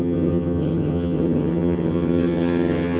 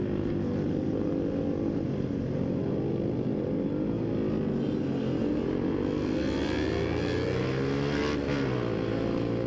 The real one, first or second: second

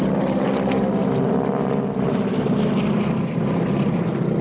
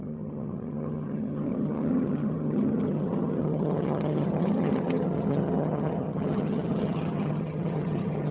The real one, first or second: first